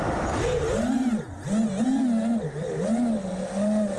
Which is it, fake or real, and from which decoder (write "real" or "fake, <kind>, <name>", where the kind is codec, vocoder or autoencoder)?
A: real